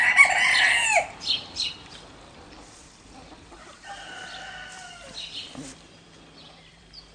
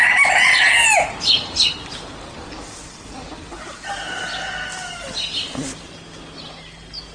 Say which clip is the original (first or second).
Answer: second